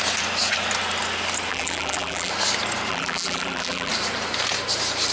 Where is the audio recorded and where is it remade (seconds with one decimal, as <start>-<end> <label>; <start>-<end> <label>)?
0.0-1.5 recorded; 1.5-2.3 remade; 2.3-2.9 recorded; 2.9-3.9 remade; 3.9-5.1 recorded